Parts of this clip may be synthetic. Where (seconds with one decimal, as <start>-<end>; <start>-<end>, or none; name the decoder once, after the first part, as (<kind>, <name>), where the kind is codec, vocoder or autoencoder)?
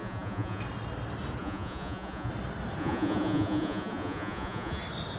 0.0-0.6 (vocoder, Vocos); 1.4-2.3; 2.8-4.8